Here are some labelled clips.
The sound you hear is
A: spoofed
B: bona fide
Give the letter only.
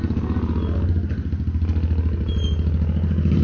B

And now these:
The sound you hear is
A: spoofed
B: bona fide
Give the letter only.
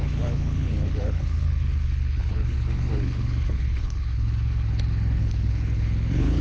A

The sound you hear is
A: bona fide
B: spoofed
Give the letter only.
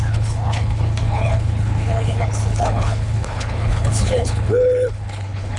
B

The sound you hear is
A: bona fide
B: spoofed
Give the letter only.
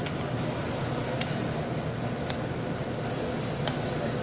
A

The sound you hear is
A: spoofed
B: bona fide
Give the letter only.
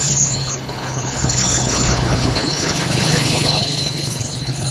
A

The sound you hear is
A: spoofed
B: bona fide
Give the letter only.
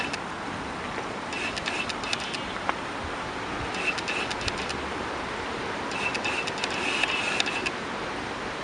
B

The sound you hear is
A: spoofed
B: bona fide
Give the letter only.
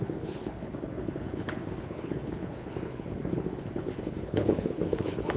A